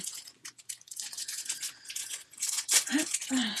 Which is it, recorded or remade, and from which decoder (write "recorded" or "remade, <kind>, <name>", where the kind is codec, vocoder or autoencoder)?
remade, vocoder, Vocos